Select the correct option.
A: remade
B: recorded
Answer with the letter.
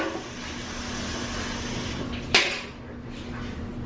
B